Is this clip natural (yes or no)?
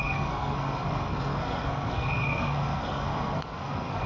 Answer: no